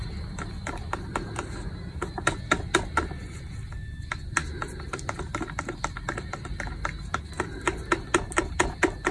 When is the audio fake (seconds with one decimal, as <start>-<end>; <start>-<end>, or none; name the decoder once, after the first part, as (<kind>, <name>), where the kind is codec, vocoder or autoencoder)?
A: none